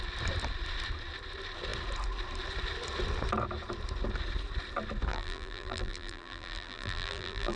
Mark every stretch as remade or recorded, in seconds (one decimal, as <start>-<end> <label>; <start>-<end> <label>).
0.0-5.1 recorded; 5.1-7.6 remade